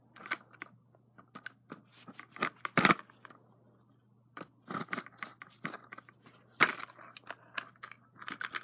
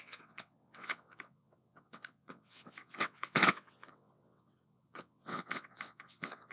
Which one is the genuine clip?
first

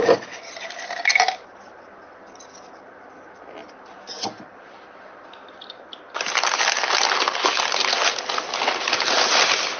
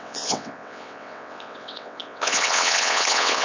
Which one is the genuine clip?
first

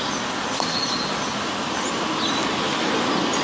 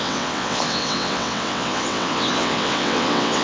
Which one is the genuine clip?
first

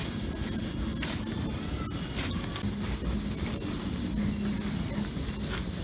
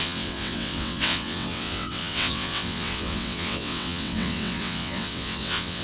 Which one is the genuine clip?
first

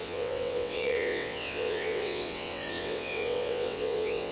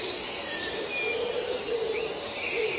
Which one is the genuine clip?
second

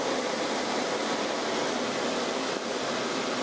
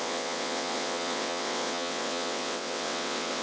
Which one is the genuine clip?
first